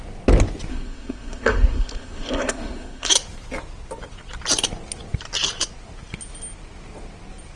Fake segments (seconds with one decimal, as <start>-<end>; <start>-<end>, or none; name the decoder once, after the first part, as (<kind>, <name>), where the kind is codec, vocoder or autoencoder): 0.7-3.1 (codec, SNAC)